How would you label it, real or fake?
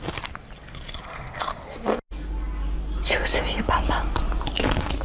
real